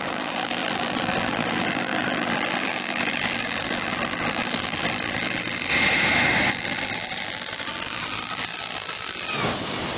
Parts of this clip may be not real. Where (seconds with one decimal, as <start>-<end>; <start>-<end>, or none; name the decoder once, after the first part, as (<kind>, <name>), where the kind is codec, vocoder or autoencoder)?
0.0-5.7 (vocoder, BigVGAN v2); 6.5-9.3